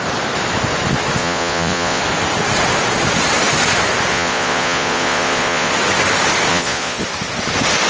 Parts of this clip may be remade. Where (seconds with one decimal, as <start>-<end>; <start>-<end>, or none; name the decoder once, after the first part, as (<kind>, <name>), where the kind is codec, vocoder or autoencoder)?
1.2-2.0 (vocoder, Vocos); 4.1-5.7; 6.5-7.0